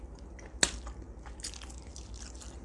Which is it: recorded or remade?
recorded